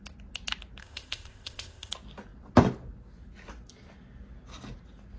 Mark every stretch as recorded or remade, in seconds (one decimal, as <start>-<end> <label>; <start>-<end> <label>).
0.0-0.8 recorded; 0.8-1.9 remade; 1.9-5.2 recorded